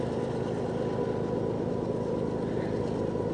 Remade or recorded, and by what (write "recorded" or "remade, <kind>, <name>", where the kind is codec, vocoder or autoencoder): recorded